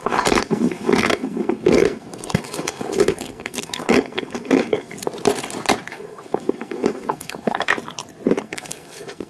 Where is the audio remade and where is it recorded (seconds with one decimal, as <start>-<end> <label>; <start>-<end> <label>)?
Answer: 0.0-4.9 remade; 4.9-5.9 recorded; 5.9-7.7 remade; 7.7-8.4 recorded; 8.4-9.3 remade